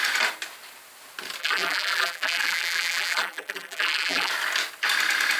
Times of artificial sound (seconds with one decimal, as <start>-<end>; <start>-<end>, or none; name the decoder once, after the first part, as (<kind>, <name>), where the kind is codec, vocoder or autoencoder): 1.4-4.3 (vocoder, BigVGAN v2)